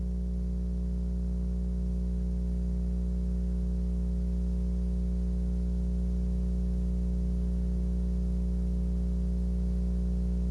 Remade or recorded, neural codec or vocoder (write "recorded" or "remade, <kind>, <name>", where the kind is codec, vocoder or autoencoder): recorded